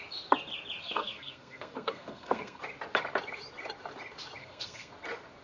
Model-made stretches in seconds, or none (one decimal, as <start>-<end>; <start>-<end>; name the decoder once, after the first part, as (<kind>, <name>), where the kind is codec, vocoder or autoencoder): 0.8-2.6 (codec, SNAC); 4.4-4.9